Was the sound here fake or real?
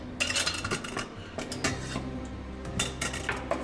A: real